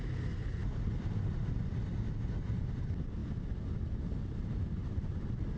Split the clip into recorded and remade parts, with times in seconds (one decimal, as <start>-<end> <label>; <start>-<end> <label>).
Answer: 0.0-0.6 recorded; 0.6-1.5 remade; 1.5-5.6 recorded